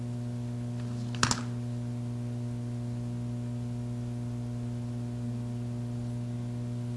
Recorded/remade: recorded